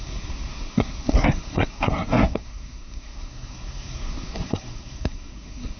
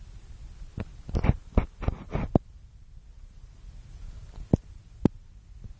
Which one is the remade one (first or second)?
first